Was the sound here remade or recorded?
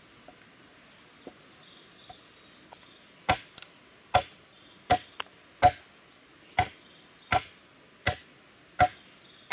recorded